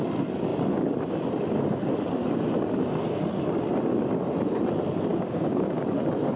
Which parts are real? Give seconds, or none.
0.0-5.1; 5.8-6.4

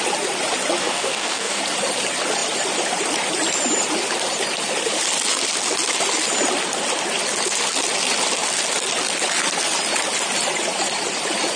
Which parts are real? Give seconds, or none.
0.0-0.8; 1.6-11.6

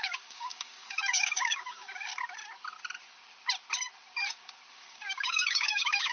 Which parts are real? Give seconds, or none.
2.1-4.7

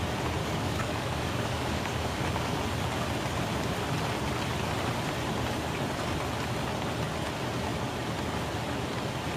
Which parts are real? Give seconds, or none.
0.0-0.4; 2.6-9.4